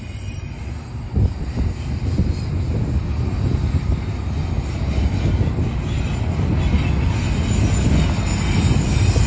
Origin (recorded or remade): recorded